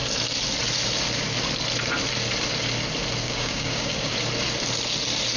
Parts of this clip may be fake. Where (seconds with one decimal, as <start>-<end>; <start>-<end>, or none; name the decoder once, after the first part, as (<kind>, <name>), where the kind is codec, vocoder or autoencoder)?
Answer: 3.2-4.1 (codec, DAC)